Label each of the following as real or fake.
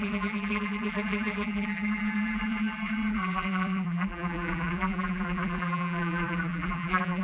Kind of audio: fake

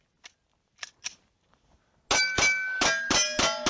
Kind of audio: real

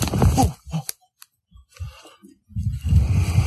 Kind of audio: real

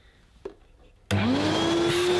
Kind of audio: real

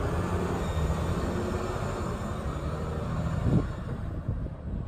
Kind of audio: real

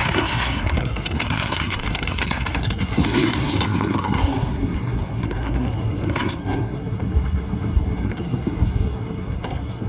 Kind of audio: fake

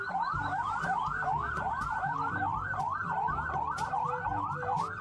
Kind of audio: fake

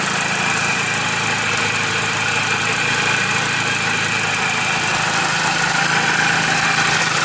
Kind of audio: real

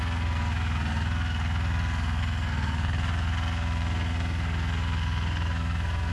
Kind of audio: fake